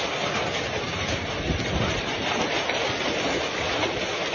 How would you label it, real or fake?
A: real